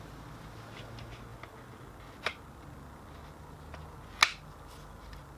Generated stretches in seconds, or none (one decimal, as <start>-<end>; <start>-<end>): none